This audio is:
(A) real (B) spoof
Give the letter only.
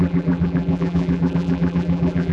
B